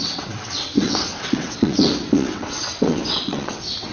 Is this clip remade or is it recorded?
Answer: remade